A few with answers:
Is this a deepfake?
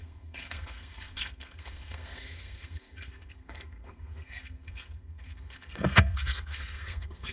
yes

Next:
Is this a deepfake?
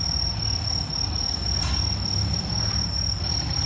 no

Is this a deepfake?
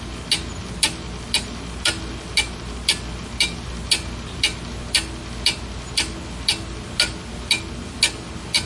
no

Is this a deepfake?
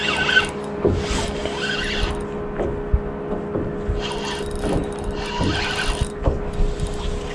no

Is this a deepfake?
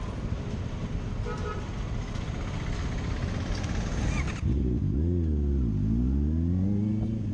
no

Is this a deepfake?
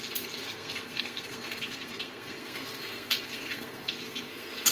yes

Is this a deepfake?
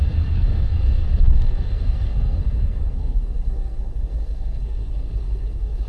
yes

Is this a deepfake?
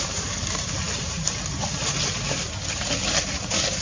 yes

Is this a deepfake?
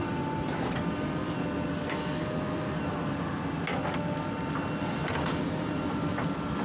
no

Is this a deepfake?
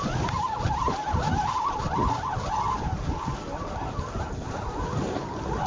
no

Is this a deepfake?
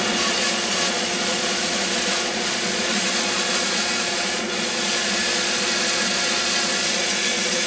yes